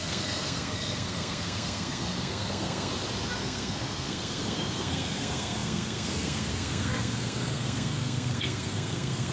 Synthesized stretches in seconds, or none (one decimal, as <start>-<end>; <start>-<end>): 0.0-2.9; 3.4-9.3